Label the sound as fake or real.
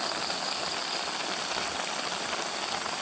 real